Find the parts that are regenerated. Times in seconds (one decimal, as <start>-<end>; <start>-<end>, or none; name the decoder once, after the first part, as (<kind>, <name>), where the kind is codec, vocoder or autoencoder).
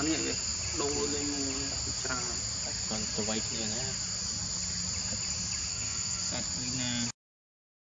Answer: 5.7-6.3 (codec, SNAC)